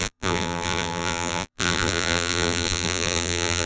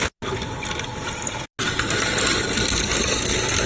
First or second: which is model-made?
first